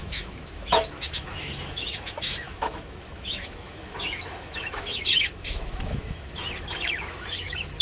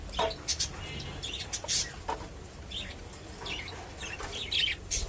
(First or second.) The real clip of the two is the second